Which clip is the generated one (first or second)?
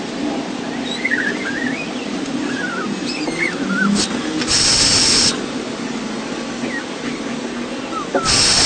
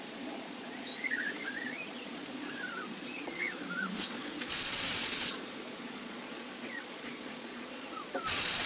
second